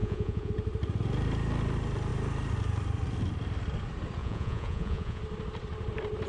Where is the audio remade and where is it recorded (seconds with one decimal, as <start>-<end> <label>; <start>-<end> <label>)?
0.0-0.5 remade; 0.5-4.2 recorded; 4.2-5.2 remade; 5.2-6.3 recorded